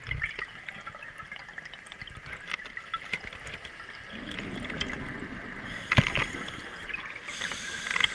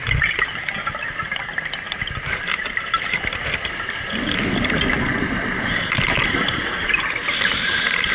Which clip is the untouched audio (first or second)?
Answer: first